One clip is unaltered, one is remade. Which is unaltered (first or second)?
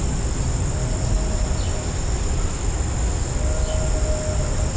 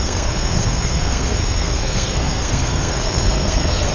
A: first